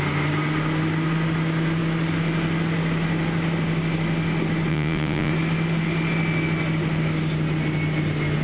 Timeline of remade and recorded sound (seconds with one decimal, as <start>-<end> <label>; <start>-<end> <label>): 0.0-4.7 recorded; 4.7-5.3 remade; 5.3-8.4 recorded